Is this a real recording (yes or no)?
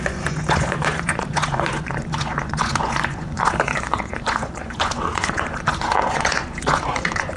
no